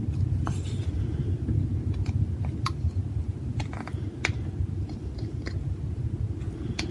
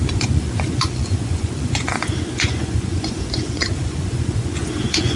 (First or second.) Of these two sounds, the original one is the first